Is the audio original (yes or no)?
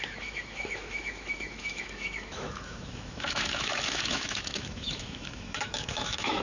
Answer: no